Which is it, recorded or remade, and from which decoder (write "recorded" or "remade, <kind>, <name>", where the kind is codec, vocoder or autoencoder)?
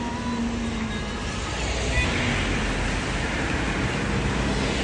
recorded